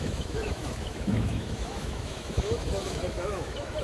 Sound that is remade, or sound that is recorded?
remade